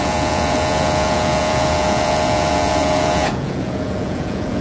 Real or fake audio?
fake